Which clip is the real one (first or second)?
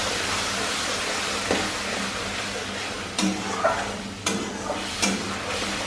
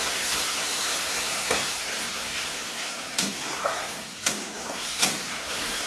first